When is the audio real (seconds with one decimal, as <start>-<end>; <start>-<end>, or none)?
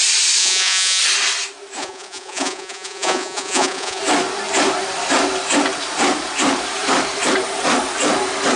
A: 0.0-0.4; 1.0-1.8; 4.0-8.6